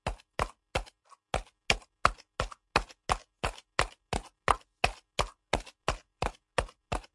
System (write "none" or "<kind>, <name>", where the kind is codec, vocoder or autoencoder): none